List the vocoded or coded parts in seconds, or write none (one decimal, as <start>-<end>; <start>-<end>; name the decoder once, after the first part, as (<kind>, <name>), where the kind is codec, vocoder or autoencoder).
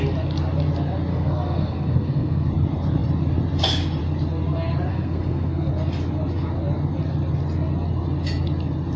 1.1-2.5 (codec, SNAC); 4.9-5.7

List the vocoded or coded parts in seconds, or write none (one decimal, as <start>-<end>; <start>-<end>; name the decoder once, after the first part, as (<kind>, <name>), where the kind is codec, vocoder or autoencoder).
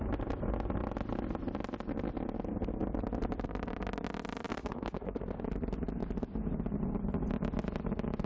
4.5-5.4 (codec, SNAC)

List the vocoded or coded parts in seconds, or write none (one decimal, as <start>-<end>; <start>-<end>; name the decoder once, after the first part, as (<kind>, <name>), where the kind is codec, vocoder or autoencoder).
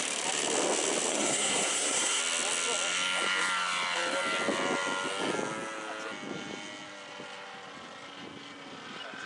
1.1-2.2 (codec, SNAC)